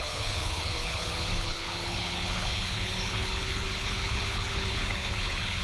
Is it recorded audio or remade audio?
remade